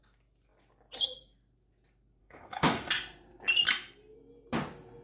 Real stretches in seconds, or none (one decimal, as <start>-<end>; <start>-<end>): 0.0-2.2; 2.9-5.0